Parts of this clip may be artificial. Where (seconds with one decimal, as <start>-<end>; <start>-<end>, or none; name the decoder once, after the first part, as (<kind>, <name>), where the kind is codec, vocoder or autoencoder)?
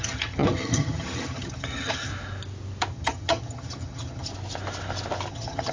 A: 0.0-2.1 (vocoder, HiFi-GAN); 2.9-4.3; 5.3-5.7